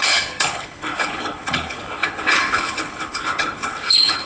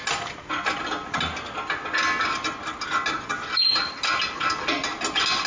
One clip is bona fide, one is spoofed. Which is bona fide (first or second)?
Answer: second